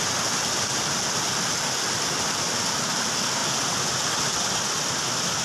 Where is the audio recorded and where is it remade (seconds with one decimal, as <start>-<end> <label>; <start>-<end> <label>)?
0.0-5.4 recorded